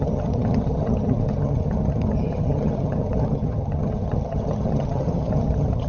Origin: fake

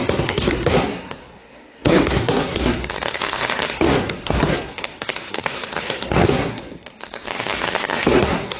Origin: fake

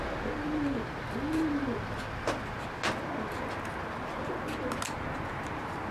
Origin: real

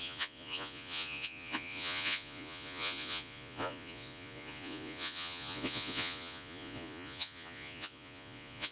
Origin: fake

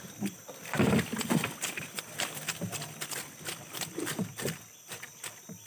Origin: real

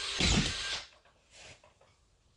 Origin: real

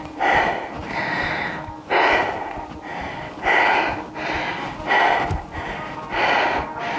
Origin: real